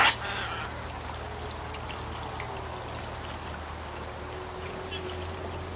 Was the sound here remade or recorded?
recorded